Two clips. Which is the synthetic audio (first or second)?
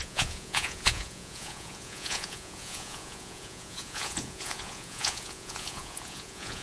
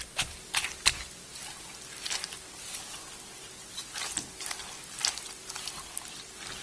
first